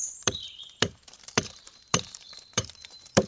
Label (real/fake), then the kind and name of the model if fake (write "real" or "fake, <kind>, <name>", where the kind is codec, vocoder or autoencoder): fake, vocoder, BigVGAN v2